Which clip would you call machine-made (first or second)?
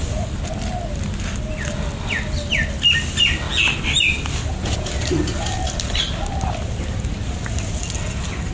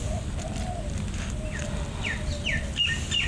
second